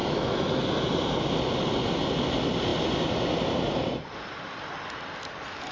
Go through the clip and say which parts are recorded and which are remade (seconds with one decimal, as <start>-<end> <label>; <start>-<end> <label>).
0.0-0.6 remade; 0.6-5.7 recorded